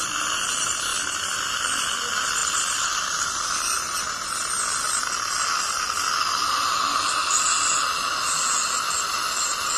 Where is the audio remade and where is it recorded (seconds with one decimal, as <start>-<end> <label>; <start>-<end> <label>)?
0.0-0.9 recorded; 0.9-1.5 remade; 1.5-2.4 recorded; 2.4-3.5 remade; 3.5-9.8 recorded